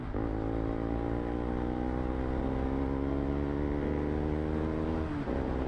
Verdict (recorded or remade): recorded